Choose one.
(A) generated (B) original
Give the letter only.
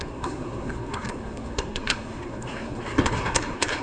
A